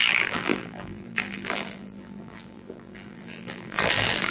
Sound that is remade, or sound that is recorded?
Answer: remade